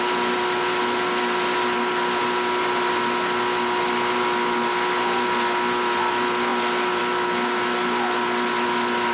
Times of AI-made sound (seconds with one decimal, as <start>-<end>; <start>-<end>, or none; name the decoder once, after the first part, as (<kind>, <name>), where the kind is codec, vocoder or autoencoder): none